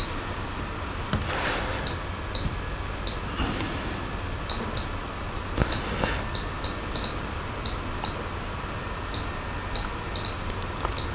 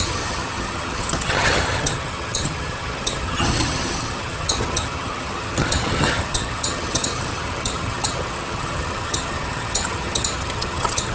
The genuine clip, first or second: first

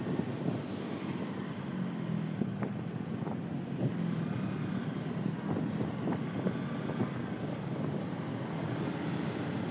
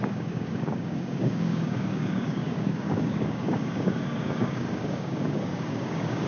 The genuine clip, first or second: first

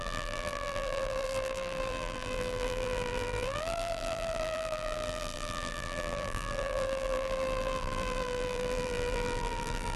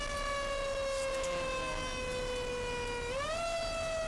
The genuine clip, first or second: second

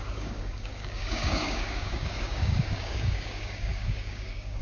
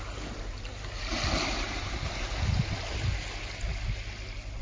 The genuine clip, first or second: second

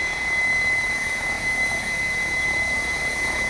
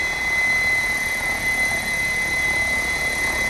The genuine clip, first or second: second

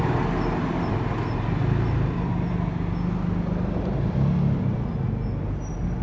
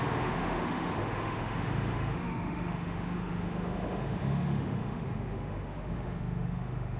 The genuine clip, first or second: first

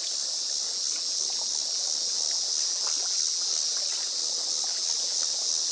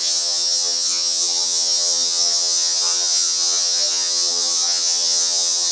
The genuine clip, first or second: first